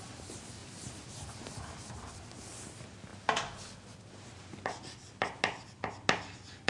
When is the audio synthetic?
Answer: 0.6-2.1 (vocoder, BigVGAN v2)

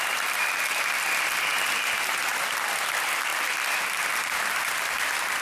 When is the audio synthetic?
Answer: 0.0-5.4 (vocoder, BigVGAN v2)

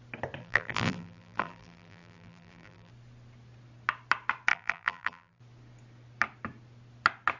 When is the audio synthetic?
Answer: 0.4-2.9 (vocoder, BigVGAN v2); 4.5-5.4

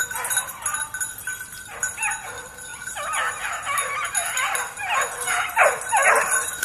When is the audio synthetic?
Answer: 1.8-2.7 (vocoder, BigVGAN v2); 3.5-4.2

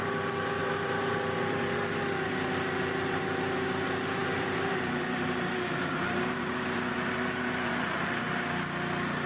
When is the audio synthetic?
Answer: 0.6-2.3 (vocoder, BigVGAN v2); 4.2-8.3